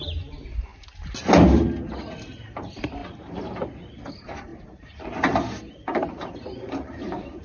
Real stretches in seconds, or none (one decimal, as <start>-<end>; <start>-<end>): 0.7-2.5; 3.0-4.1